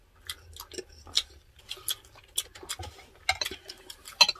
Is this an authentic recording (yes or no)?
yes